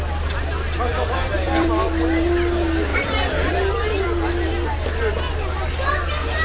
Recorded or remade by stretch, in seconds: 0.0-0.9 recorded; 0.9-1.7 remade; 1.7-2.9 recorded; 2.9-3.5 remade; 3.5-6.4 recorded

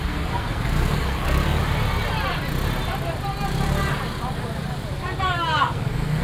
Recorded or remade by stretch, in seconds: 0.0-1.6 remade; 1.6-5.2 recorded; 5.2-6.2 remade